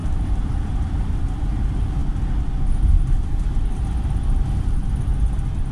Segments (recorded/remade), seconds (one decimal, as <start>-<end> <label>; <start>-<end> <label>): 0.0-1.1 remade; 1.1-5.7 recorded